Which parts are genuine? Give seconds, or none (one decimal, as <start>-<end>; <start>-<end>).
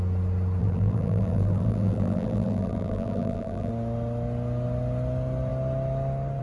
0.0-0.6; 3.7-6.4